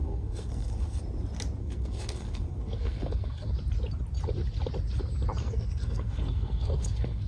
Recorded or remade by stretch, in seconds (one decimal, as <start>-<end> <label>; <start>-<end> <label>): 0.0-1.0 remade; 1.0-1.6 recorded; 1.6-3.5 remade; 3.5-5.4 recorded; 5.4-7.3 remade